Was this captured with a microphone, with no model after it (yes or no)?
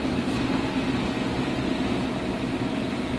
yes